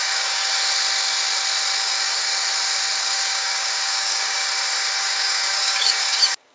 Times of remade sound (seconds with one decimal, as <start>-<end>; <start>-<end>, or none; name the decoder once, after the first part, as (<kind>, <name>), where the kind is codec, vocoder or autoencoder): 0.0-0.5 (codec, DAC); 1.8-2.3; 3.0-4.4; 5.0-6.5